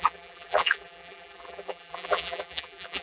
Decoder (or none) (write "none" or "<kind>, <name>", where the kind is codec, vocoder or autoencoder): vocoder, BigVGAN v2